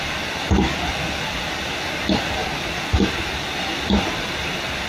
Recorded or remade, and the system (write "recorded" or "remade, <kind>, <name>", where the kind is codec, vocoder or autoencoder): recorded